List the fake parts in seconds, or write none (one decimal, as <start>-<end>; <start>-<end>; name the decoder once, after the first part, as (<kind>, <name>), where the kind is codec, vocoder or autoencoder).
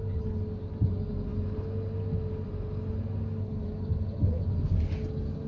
none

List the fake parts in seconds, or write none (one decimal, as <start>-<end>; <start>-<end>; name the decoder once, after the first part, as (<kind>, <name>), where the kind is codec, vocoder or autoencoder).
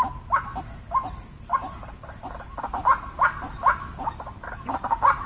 none